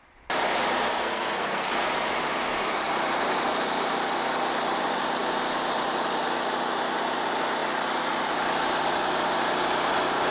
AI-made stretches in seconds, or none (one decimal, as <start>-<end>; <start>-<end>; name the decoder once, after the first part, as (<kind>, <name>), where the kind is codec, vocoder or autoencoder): 0.9-1.7 (codec, SNAC)